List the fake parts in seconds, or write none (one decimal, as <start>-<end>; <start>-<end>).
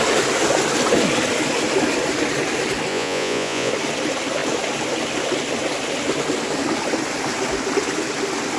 2.9-3.7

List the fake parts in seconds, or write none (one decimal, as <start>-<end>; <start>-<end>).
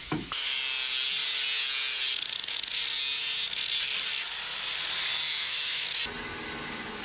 0.0-0.6; 5.3-6.0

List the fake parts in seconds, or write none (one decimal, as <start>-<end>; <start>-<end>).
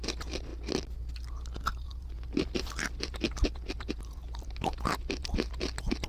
none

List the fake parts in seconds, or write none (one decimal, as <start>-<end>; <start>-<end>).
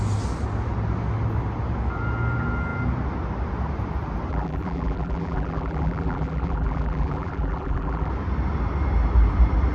4.3-8.1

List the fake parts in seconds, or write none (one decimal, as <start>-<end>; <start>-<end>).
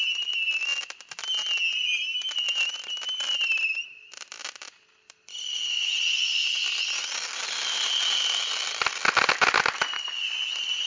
none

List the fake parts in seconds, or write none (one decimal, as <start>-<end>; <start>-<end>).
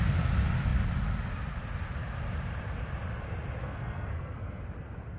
3.6-4.6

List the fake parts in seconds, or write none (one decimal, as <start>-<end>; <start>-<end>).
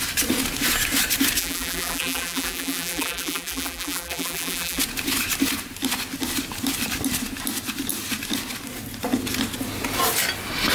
1.4-4.8